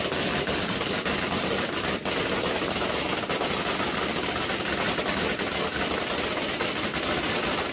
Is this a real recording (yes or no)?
yes